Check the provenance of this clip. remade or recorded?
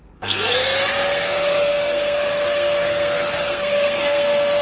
remade